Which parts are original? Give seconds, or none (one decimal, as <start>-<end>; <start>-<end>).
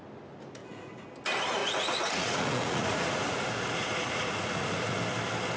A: 0.0-0.6; 1.1-1.6; 5.0-5.6